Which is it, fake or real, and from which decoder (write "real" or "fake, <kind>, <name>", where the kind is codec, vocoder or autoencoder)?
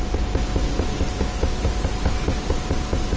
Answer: real